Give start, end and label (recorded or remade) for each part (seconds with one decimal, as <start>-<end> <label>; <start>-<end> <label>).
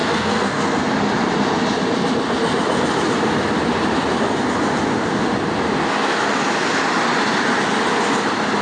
0.0-0.9 remade; 0.9-8.6 recorded